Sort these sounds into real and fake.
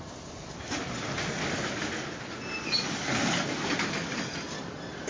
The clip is real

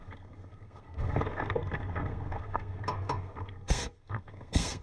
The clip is fake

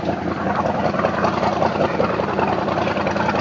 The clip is real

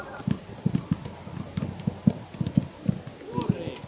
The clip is real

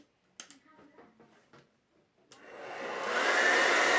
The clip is real